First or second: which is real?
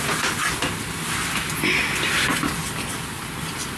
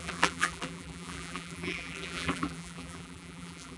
first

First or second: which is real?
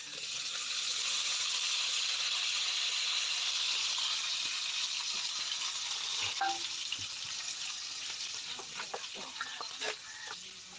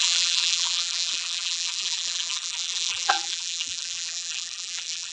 first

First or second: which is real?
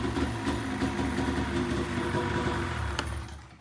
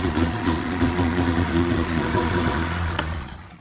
first